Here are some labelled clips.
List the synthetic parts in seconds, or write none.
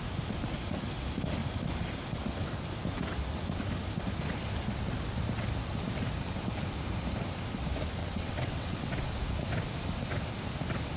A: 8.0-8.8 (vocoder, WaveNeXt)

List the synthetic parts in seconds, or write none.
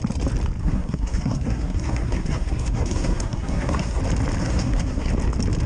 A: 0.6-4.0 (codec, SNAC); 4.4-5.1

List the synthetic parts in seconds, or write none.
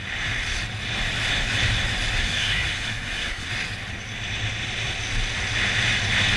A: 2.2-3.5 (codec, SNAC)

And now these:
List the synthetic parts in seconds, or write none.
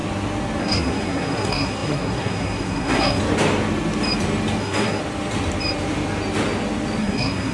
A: 0.6-3.2 (codec, SNAC); 4.6-5.0; 7.0-7.5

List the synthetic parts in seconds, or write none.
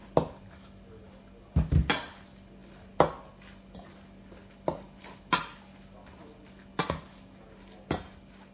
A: none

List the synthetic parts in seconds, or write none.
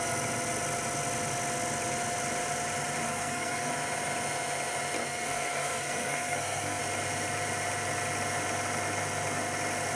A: 3.0-3.7 (codec, SNAC); 5.0-6.8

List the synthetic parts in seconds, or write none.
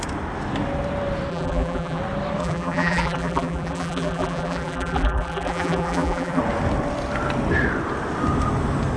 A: 1.3-2.0 (vocoder, BigVGAN v2); 2.4-6.4